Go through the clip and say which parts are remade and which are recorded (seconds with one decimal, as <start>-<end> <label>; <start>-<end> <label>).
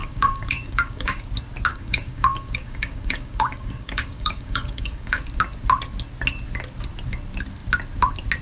0.0-1.2 remade; 1.2-1.7 recorded; 1.7-5.2 remade; 5.2-8.4 recorded